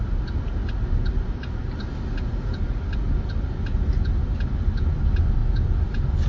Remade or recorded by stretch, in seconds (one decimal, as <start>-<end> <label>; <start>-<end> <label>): 0.0-6.3 recorded